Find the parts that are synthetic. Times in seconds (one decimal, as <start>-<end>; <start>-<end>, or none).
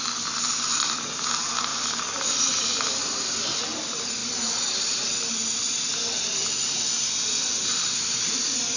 none